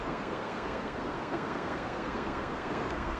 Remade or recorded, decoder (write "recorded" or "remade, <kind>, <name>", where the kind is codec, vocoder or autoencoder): remade, codec, SNAC